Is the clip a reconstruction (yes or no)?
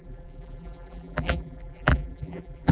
yes